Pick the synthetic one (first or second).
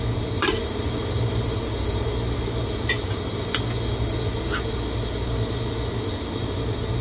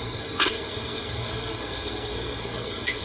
second